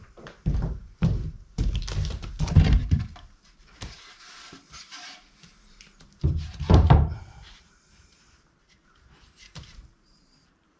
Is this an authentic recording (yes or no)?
no